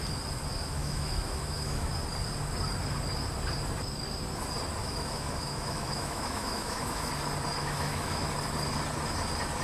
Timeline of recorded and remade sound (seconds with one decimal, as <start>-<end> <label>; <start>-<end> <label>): 0.0-0.8 recorded; 0.8-1.9 remade; 1.9-4.8 recorded; 4.8-7.1 remade; 7.1-7.6 recorded; 7.6-8.3 remade; 8.3-9.6 recorded